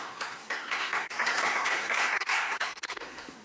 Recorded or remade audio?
remade